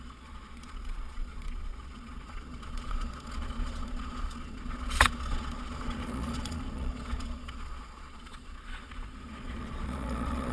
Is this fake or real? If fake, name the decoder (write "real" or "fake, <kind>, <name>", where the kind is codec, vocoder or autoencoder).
fake, vocoder, Vocos